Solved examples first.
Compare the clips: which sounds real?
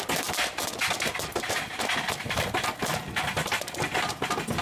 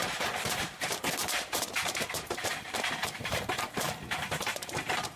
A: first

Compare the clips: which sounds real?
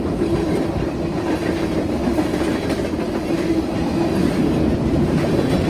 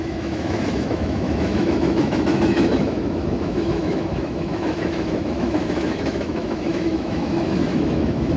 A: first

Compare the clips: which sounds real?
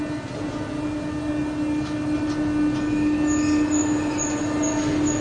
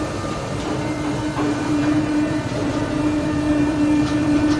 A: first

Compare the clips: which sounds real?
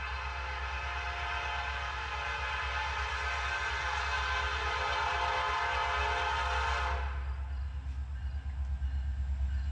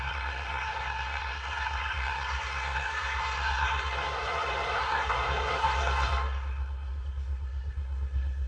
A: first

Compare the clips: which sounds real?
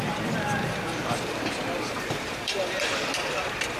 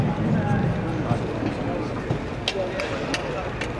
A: second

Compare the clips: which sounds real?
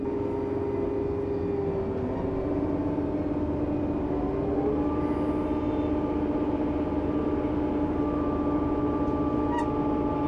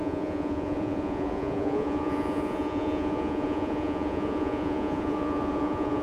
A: first